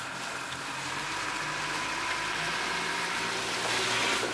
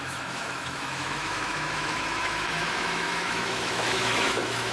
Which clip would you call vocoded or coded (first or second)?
second